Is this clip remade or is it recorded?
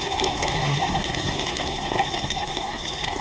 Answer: remade